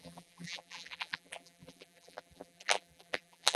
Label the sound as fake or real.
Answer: fake